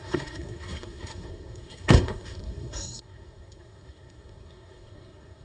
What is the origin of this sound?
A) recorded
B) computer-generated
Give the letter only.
B